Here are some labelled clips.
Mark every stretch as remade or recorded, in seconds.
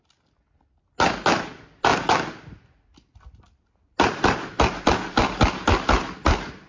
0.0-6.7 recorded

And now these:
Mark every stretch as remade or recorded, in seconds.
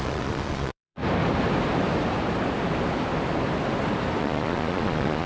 0.0-1.0 remade; 1.0-4.2 recorded; 4.2-5.3 remade